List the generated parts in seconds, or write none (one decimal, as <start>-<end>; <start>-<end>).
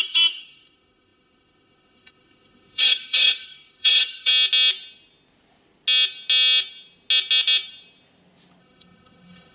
0.0-4.3; 8.6-9.5